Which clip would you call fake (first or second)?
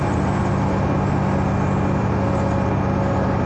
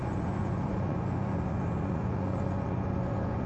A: second